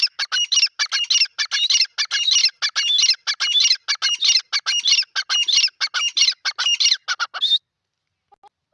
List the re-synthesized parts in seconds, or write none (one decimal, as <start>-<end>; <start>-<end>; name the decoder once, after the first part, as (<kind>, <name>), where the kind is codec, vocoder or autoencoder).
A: none